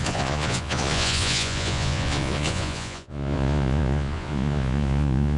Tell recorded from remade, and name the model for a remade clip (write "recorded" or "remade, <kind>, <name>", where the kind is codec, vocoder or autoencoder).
remade, vocoder, Vocos